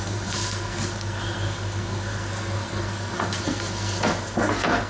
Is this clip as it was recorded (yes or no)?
no